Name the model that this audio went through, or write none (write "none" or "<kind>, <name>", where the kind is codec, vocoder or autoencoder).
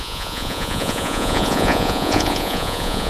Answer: vocoder, Vocos